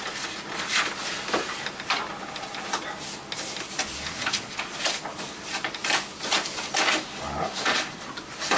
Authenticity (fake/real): real